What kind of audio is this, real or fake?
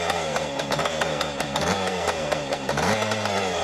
fake